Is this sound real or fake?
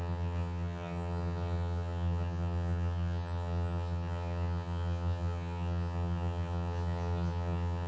fake